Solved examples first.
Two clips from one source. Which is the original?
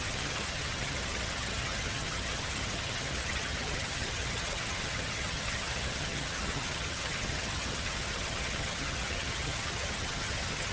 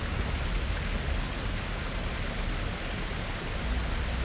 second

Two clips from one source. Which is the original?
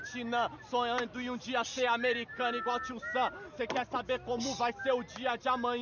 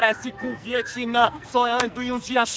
first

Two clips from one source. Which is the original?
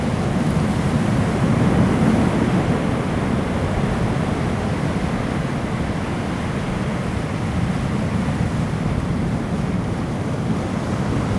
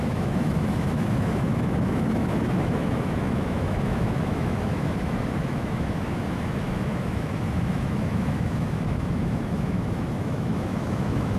first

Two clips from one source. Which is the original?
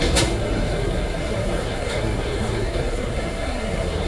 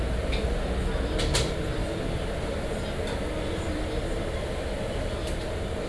second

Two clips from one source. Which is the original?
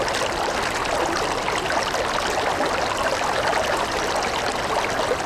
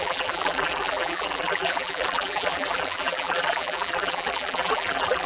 first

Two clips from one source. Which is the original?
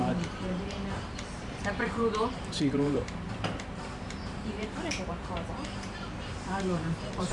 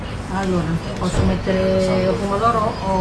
second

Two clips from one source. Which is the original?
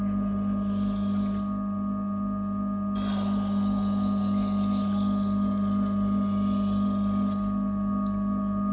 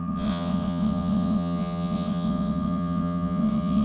first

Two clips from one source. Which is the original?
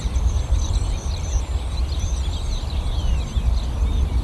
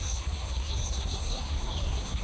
first